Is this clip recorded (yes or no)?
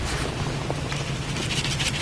yes